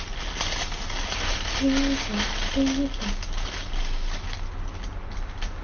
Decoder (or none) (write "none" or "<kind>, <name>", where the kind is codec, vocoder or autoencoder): none